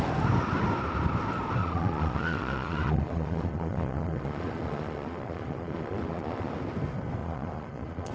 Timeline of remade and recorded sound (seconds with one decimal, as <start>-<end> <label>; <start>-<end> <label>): 0.0-1.6 recorded; 1.6-6.5 remade; 6.5-7.2 recorded; 7.2-8.1 remade